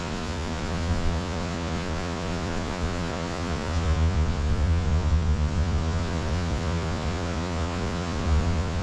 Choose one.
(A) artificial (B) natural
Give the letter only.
A